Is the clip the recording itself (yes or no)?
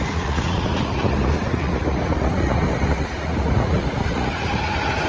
no